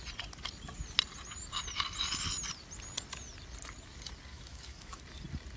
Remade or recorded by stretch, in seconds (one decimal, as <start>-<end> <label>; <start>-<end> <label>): 0.0-4.3 recorded; 4.3-5.0 remade; 5.0-5.6 recorded